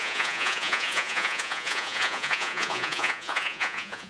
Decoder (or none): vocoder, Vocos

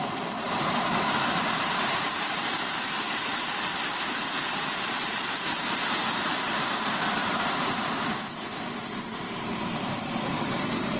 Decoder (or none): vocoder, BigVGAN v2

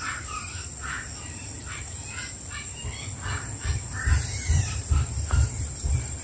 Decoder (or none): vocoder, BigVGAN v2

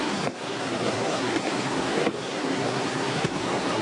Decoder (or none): codec, SNAC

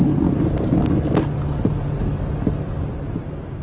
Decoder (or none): none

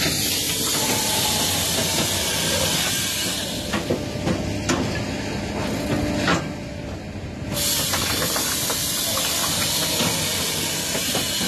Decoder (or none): none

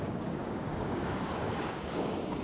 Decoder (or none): codec, DAC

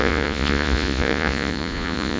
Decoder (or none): vocoder, Vocos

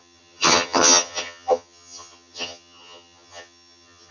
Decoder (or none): vocoder, HiFi-GAN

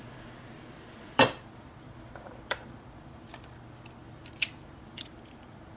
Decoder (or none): vocoder, BigVGAN v2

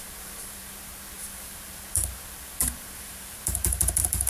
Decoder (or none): vocoder, BigVGAN v2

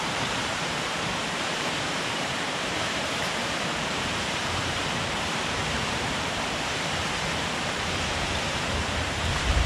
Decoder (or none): vocoder, BigVGAN v2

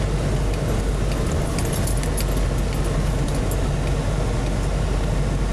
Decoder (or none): none